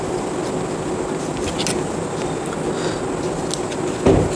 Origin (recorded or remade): recorded